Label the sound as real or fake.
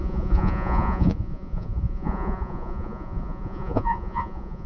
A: fake